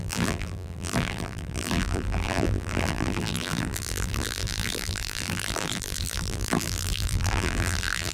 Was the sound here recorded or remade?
remade